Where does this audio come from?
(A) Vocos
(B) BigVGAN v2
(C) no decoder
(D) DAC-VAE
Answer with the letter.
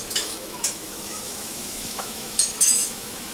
D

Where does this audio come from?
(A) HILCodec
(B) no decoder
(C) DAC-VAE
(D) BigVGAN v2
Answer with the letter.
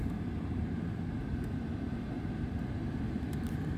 B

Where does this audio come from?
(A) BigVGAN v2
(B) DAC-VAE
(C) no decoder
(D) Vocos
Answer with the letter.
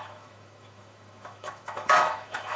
B